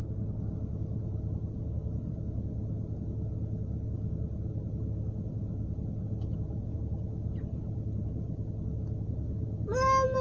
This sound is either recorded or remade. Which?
recorded